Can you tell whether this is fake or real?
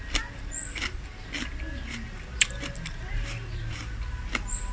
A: fake